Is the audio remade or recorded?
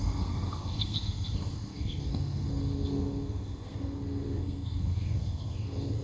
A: remade